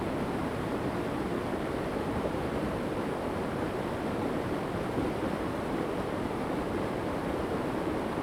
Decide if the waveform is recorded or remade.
remade